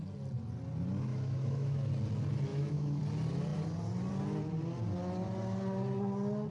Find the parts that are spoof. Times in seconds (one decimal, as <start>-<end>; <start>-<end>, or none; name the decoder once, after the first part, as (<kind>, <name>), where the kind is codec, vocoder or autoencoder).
1.1-1.9 (autoencoder, DAC-VAE); 2.5-3.0